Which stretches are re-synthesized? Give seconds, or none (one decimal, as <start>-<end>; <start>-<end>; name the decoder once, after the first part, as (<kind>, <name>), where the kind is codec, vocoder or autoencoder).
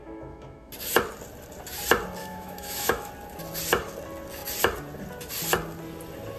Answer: 0.0-0.7 (autoencoder, DAC-VAE); 2.2-3.1